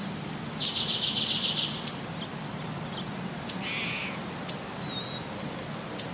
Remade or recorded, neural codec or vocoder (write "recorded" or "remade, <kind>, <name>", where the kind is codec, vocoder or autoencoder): recorded